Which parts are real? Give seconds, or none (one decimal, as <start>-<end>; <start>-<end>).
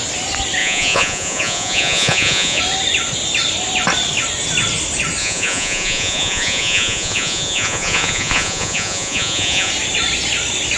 0.0-0.6; 2.6-5.2; 9.7-10.8